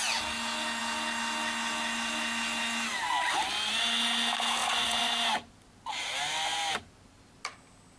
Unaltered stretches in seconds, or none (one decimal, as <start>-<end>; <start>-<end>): 0.0-4.6; 5.1-8.0